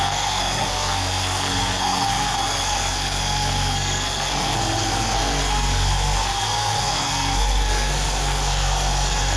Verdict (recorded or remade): remade